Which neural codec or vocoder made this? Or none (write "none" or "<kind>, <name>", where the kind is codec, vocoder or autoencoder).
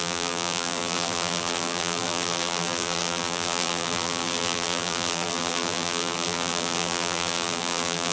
vocoder, BigVGAN v2